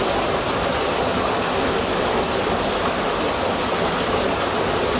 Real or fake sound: real